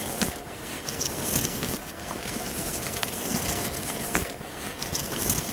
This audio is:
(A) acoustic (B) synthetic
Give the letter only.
B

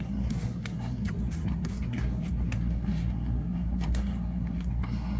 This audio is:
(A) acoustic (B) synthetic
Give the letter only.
B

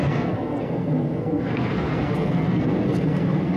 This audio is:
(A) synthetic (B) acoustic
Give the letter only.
A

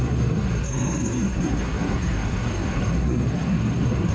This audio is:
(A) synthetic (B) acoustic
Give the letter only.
A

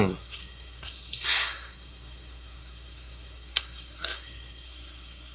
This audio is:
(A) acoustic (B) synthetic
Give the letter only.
B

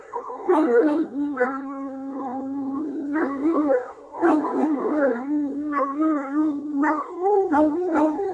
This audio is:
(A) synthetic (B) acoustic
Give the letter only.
A